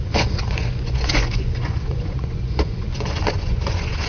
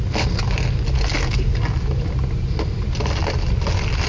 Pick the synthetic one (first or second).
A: first